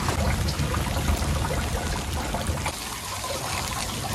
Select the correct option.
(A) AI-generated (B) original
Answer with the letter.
A